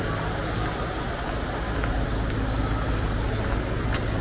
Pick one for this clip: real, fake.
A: real